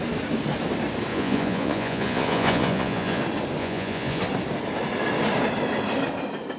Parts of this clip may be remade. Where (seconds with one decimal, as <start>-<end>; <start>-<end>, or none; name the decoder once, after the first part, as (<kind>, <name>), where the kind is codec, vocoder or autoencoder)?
1.1-3.2 (vocoder, Vocos); 3.6-4.2